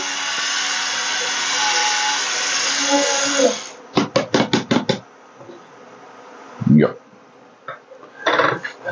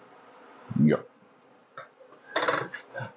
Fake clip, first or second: second